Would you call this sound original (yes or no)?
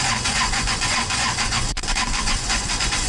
no